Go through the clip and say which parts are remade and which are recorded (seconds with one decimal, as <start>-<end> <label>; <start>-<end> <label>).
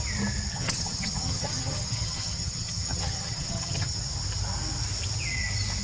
0.0-0.5 recorded; 0.5-4.0 remade; 4.0-5.8 recorded